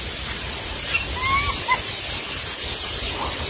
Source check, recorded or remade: recorded